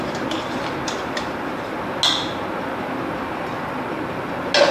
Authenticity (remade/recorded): recorded